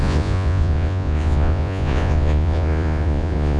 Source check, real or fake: fake